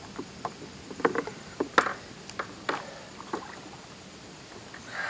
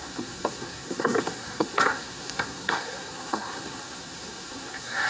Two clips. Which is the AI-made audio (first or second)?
second